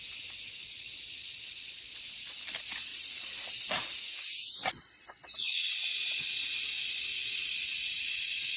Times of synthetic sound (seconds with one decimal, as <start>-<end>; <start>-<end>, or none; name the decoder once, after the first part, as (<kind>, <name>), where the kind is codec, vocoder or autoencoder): 0.6-2.0 (vocoder, Vocos); 2.9-3.4; 4.6-8.6